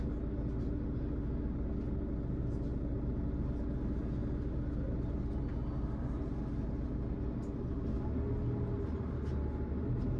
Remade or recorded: recorded